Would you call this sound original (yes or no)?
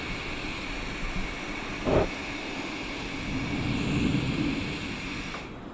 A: yes